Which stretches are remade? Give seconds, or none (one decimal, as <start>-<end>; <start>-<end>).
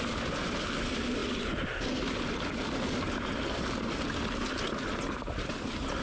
none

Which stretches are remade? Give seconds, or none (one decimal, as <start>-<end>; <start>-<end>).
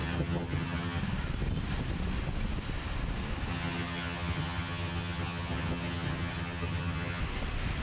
0.0-1.0; 3.5-7.2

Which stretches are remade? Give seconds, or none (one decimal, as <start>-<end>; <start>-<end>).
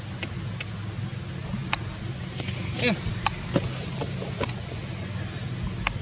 none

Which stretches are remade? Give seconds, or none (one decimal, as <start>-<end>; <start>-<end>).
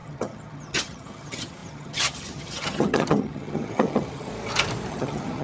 0.0-4.3; 4.9-5.4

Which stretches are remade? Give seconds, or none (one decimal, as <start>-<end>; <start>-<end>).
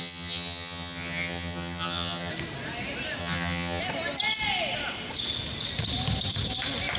0.0-2.3; 3.2-3.8